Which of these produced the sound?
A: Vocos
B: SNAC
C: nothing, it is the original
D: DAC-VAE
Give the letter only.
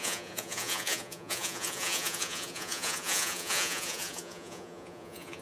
A